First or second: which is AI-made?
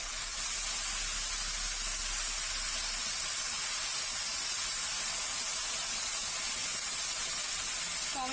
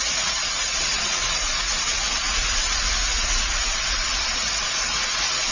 second